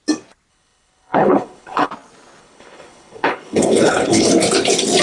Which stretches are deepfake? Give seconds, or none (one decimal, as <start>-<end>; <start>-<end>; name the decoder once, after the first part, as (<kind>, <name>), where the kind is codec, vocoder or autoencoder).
0.5-1.9 (codec, HILCodec); 2.4-4.3